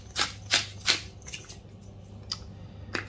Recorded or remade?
recorded